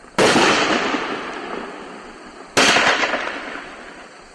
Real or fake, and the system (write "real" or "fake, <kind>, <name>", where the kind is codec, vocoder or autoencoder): real